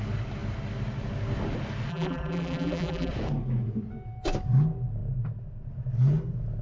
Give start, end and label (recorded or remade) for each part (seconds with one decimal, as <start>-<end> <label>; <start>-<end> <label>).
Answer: 0.0-1.9 recorded; 1.9-3.1 remade; 3.1-6.6 recorded